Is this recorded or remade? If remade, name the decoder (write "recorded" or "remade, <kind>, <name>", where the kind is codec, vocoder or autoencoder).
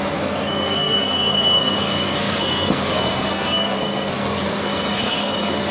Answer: remade, codec, SNAC